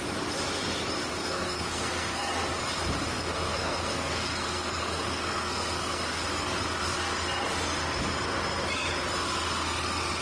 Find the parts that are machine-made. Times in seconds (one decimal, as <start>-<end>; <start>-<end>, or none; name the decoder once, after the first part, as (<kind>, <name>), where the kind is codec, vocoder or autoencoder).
1.2-2.3 (codec, SNAC); 3.1-6.2